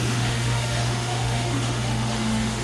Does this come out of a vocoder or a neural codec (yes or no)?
yes